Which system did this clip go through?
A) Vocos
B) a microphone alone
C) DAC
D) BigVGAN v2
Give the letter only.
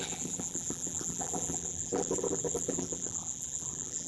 D